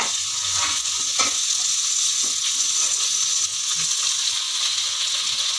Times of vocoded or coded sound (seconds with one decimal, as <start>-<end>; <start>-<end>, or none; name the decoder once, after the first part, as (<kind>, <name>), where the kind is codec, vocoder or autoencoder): 0.0-5.6 (vocoder, Vocos)